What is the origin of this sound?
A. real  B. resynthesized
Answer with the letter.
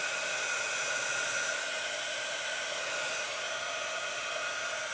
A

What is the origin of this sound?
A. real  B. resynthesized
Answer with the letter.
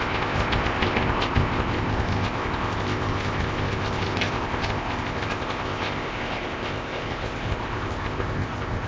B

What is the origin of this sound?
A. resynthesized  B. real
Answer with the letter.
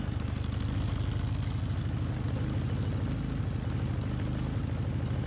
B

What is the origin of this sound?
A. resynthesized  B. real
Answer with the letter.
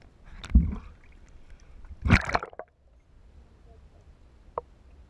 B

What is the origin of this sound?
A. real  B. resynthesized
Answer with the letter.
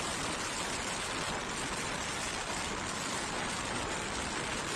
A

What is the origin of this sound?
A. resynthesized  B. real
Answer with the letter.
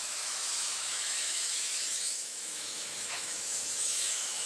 A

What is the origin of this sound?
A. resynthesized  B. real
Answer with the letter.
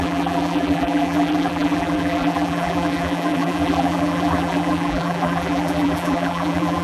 A